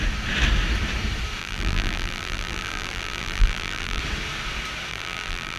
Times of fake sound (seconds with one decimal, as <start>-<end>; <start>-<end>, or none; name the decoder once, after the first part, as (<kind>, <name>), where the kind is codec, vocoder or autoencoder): 1.4-4.0 (vocoder, BigVGAN v2); 4.9-5.6